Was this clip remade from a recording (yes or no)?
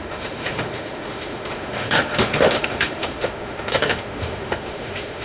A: yes